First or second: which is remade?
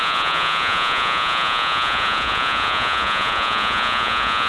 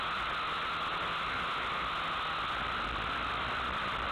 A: first